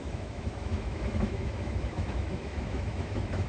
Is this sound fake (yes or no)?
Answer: yes